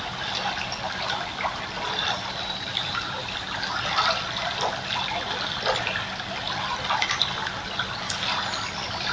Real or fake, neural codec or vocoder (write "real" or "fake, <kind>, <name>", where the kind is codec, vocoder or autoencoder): real